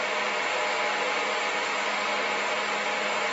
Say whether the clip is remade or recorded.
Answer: recorded